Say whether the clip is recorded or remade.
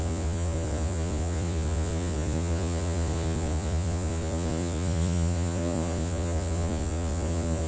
remade